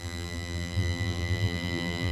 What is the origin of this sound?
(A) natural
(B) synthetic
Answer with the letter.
B